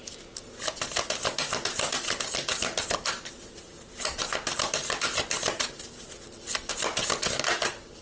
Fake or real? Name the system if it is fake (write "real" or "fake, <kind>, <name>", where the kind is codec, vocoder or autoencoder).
real